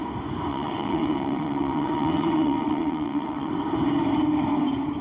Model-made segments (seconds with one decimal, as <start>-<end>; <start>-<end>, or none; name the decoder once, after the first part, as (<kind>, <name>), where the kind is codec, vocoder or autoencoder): 0.5-3.5 (vocoder, WaveNeXt)

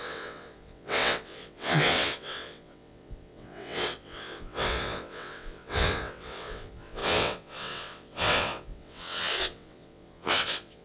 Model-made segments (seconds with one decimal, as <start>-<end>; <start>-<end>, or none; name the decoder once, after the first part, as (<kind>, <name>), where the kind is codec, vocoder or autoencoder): 0.0-10.8 (vocoder, WaveNeXt)